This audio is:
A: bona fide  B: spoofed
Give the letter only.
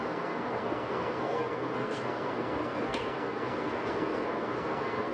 B